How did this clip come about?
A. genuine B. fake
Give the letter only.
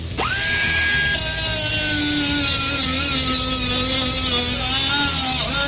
A